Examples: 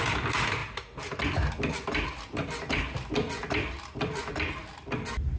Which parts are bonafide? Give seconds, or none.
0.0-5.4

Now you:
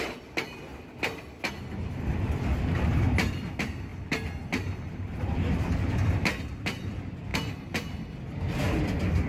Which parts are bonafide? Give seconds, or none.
0.0-9.3

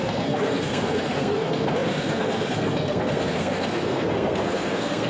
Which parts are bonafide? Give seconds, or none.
none

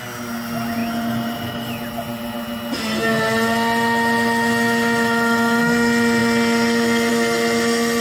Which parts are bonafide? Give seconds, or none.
0.0-8.0

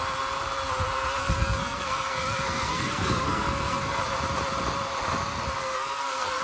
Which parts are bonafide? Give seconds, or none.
0.0-1.2; 4.0-5.6

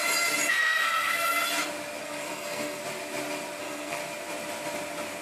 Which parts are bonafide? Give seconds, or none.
0.0-0.5; 1.4-2.0; 2.8-3.6; 4.0-5.2

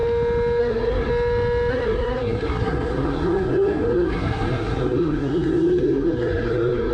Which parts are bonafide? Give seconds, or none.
0.0-0.6; 1.1-1.7

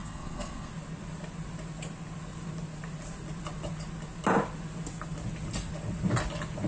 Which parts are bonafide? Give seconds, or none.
0.7-6.7